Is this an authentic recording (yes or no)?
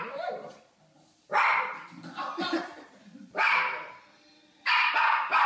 no